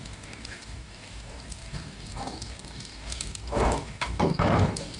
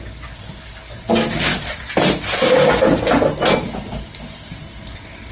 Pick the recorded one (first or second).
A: second